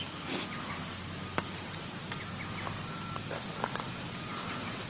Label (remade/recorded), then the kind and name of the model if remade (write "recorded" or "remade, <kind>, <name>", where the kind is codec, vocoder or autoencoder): recorded